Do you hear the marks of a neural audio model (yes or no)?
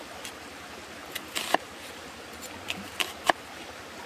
no